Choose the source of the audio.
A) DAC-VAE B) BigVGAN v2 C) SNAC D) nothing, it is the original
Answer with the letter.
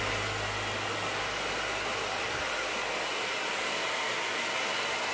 D